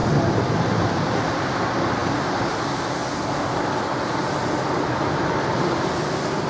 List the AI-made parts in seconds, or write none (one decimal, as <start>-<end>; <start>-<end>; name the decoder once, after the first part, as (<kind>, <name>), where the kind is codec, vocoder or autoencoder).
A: 2.0-2.5 (vocoder, BigVGAN v2)